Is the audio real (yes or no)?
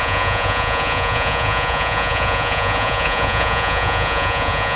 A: no